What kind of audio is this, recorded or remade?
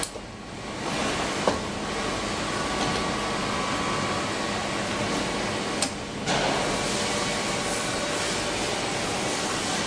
recorded